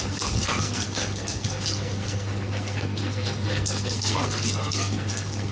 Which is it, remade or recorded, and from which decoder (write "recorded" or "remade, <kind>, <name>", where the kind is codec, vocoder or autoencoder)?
remade, codec, SNAC